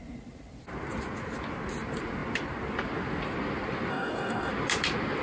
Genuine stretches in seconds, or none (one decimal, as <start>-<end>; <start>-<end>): 0.0-3.9; 4.5-5.2